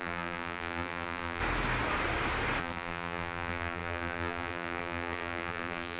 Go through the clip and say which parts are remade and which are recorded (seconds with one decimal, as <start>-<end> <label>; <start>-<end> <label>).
0.0-1.4 remade; 1.4-2.6 recorded; 2.6-6.0 remade